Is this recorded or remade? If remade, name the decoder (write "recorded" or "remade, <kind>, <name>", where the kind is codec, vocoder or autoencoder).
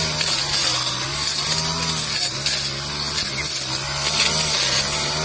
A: recorded